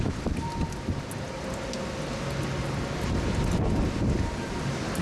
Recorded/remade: recorded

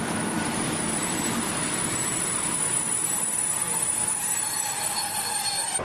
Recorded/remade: remade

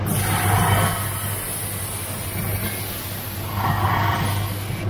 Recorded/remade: recorded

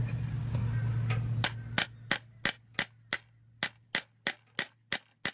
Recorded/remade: recorded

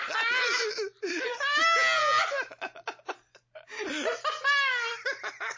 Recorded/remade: recorded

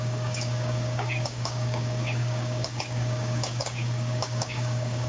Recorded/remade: remade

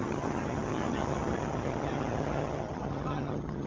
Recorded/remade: remade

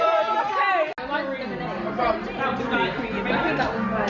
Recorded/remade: recorded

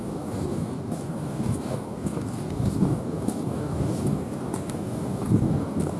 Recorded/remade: remade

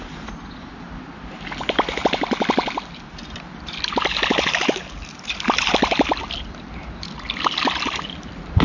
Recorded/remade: recorded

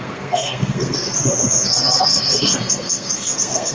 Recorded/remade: remade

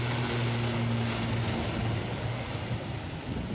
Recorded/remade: recorded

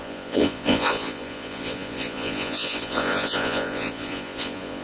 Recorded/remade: remade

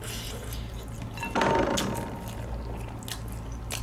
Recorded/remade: recorded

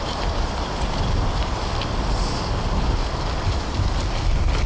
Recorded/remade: recorded